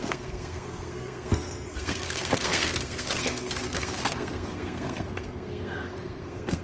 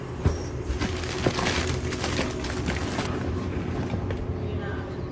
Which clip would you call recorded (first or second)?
second